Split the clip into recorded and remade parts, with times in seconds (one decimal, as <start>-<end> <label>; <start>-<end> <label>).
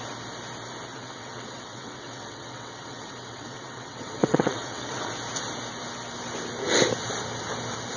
0.0-0.9 recorded; 0.9-5.1 remade; 5.1-8.0 recorded